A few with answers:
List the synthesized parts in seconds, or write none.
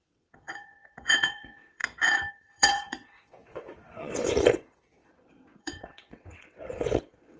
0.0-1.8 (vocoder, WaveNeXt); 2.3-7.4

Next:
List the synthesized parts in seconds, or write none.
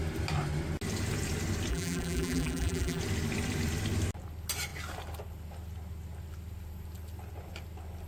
1.7-3.0 (vocoder, BigVGAN v2)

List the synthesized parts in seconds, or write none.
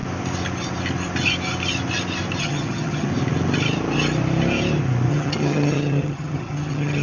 2.4-3.1 (vocoder, HiFi-GAN); 5.1-7.0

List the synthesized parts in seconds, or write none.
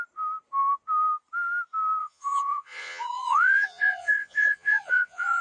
2.0-5.4 (vocoder, Vocos)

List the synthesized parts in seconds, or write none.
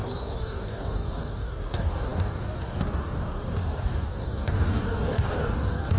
0.0-6.0 (codec, DAC)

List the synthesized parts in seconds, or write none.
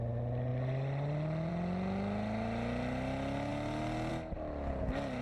none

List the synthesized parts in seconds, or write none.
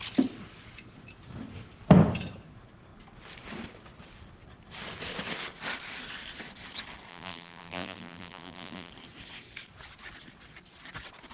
7.1-8.9 (vocoder, BigVGAN v2)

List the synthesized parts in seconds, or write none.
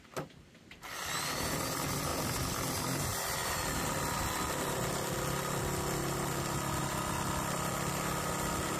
none